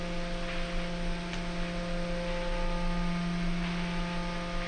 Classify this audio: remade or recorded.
recorded